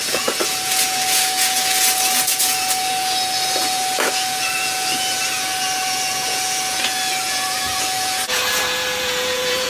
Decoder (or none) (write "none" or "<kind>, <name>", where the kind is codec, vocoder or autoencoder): vocoder, Vocos